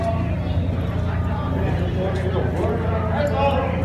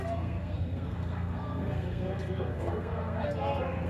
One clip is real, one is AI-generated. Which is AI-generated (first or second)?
second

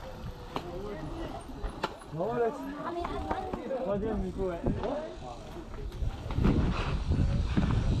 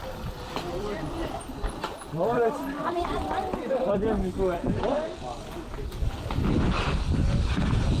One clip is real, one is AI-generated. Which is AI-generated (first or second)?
second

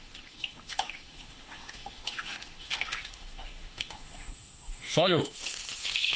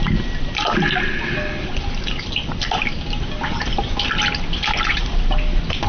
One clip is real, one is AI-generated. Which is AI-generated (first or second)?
first